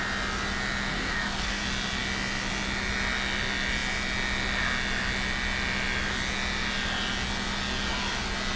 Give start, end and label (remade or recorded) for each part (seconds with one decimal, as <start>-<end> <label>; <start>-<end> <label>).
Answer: 0.0-0.9 recorded; 0.9-1.6 remade; 1.6-8.6 recorded

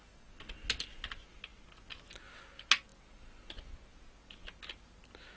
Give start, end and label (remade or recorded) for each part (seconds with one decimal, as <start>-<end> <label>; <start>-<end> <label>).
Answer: 0.0-5.4 recorded